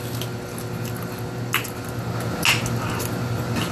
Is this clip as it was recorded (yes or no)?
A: yes